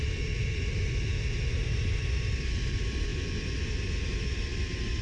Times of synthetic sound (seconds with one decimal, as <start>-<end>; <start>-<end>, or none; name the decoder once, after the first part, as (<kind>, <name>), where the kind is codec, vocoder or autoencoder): none

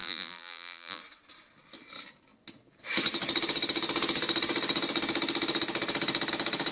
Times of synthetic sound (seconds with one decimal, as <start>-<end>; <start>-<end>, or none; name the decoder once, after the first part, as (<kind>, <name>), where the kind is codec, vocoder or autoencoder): 0.0-1.0 (vocoder, BigVGAN v2)

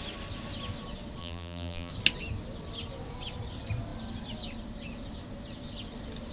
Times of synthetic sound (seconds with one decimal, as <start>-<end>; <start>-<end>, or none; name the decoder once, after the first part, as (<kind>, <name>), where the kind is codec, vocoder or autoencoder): 1.2-1.9 (vocoder, BigVGAN v2)

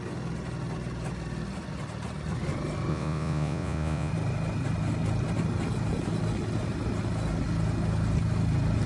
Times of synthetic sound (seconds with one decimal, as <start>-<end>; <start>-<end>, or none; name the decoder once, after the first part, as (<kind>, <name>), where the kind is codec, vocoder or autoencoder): 2.9-4.1 (vocoder, Vocos)

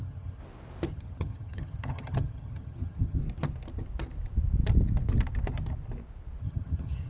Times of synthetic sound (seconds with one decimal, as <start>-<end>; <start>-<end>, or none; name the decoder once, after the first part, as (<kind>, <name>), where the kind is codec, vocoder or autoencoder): 0.0-0.4 (vocoder, HiFi-GAN); 0.9-3.2; 6.4-7.1

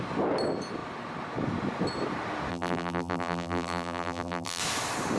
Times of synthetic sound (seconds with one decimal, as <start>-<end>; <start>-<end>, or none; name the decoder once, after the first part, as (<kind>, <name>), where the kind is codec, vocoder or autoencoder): 2.5-4.6 (vocoder, BigVGAN v2)

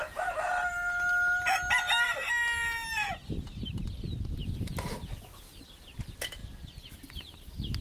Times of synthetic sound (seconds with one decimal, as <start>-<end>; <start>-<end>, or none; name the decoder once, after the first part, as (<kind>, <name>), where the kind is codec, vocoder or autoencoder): 0.0-0.5 (vocoder, BigVGAN v2); 4.4-5.2

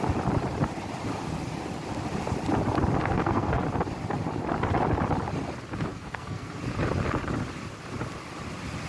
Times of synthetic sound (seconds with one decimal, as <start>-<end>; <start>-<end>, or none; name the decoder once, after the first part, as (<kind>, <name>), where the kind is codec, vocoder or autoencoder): 3.0-3.6 (codec, SNAC); 5.9-6.6